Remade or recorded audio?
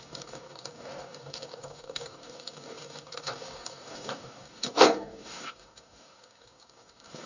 remade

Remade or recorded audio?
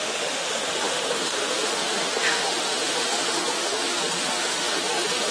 remade